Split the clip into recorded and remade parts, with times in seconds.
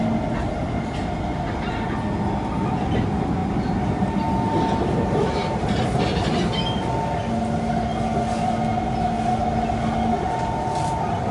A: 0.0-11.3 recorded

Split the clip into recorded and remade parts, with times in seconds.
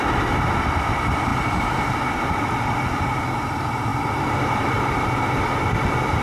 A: 0.0-6.2 recorded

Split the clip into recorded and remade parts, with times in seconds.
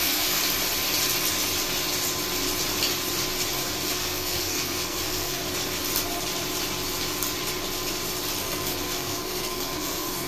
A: 0.0-0.4 remade; 0.4-3.9 recorded; 3.9-5.4 remade; 5.4-8.4 recorded; 8.4-10.3 remade